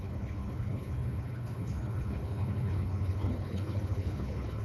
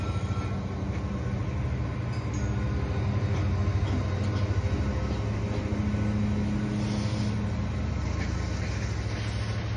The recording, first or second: second